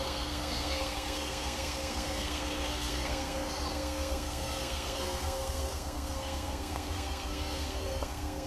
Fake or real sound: fake